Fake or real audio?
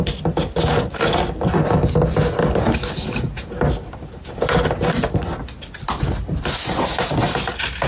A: real